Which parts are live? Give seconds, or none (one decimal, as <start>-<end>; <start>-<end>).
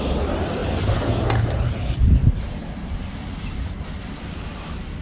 0.0-5.0